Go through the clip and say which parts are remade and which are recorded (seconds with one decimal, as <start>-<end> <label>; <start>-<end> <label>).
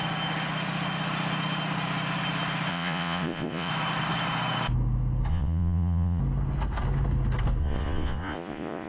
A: 0.0-2.7 recorded; 2.7-3.7 remade; 3.7-5.3 recorded; 5.3-6.2 remade; 6.2-7.6 recorded; 7.6-8.9 remade